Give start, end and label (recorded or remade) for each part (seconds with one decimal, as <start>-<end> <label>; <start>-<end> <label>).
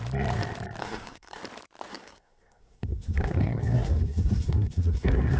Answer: 0.0-0.8 recorded; 0.8-1.4 remade; 1.4-1.9 recorded; 1.9-5.4 remade